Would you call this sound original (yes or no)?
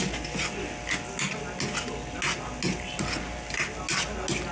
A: yes